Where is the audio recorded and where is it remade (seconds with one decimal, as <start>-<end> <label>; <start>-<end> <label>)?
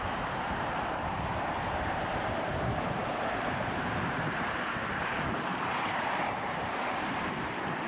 0.0-7.9 remade